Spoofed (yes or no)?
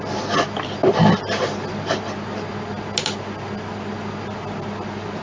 no